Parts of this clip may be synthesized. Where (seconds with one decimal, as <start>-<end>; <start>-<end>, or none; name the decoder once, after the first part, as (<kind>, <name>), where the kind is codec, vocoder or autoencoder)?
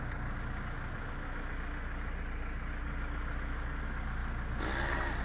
none